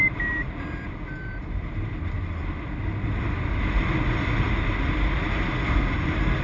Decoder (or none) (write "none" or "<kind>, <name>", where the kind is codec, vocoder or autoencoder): none